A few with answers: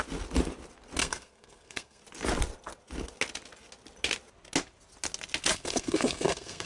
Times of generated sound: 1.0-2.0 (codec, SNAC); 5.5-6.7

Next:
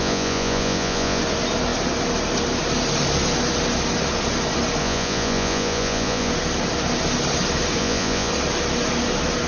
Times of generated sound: 0.0-1.2 (vocoder, Vocos); 4.8-6.3; 7.8-8.3

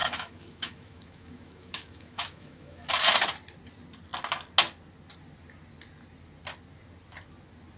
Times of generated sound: 0.0-2.9 (autoencoder, DAC-VAE)

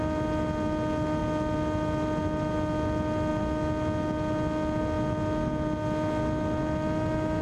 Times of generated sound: none

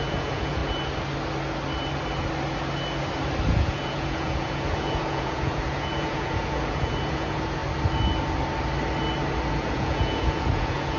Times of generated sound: 0.0-0.6 (vocoder, Vocos); 3.5-7.6; 9.5-11.0

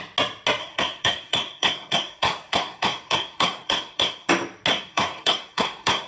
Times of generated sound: 0.6-4.3 (codec, SNAC); 4.7-6.1

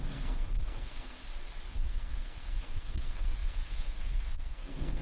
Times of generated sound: 0.0-1.2 (codec, SNAC); 1.7-5.0